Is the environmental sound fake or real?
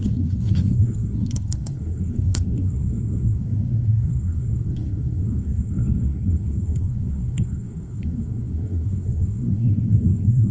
fake